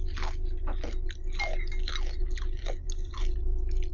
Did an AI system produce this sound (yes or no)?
no